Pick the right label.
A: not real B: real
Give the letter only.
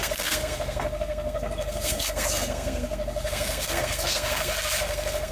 A